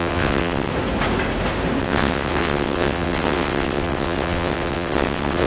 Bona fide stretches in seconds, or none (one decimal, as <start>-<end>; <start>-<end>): 0.7-1.8